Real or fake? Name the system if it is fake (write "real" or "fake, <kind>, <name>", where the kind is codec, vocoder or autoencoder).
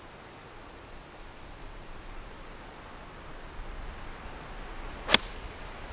real